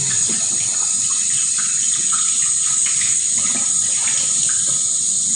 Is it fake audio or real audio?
real